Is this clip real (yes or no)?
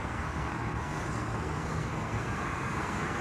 no